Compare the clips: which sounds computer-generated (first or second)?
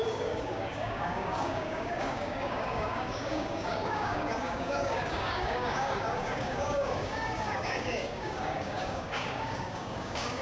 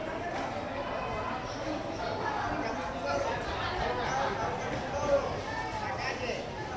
first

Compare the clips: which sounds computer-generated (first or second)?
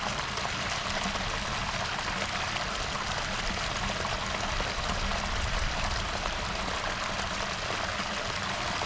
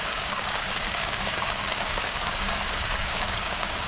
second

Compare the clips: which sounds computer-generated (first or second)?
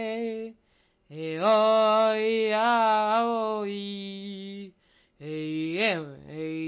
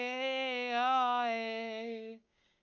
second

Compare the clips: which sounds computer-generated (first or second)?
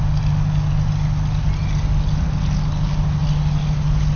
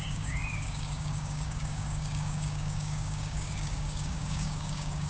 second